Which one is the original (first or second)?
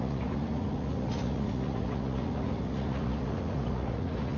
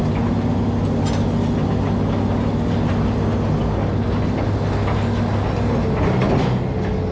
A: second